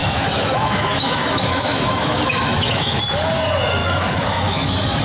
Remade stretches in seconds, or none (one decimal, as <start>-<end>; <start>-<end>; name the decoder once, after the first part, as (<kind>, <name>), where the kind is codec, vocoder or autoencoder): 0.0-3.0 (autoencoder, DAC-VAE); 3.8-5.0